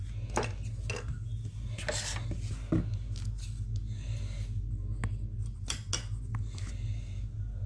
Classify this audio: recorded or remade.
recorded